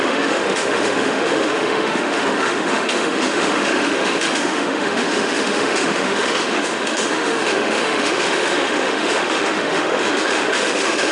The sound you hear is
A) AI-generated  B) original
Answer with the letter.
A